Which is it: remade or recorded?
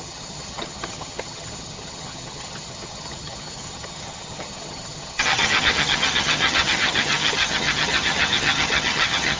remade